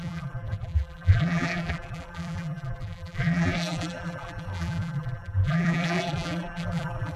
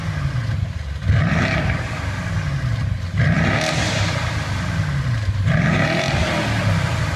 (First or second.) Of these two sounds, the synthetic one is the first